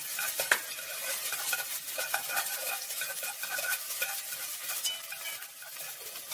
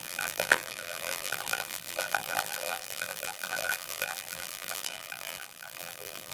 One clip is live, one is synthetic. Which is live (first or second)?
first